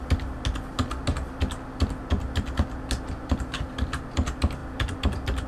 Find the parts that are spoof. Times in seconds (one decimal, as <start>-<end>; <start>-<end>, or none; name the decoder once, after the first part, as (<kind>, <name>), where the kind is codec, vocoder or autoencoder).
none